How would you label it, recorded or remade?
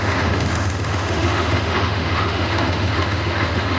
remade